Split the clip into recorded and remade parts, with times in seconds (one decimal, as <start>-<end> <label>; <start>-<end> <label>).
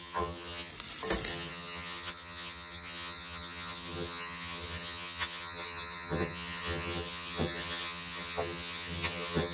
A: 0.0-0.7 remade; 0.7-1.3 recorded; 1.3-9.5 remade